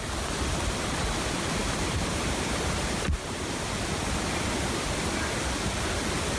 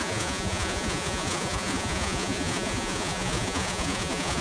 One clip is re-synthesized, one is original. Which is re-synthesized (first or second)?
second